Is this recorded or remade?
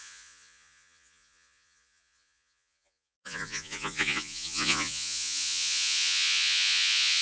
remade